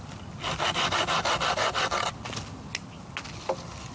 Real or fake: real